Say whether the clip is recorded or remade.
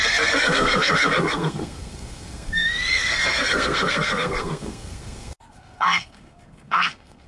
remade